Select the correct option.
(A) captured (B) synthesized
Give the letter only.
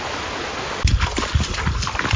A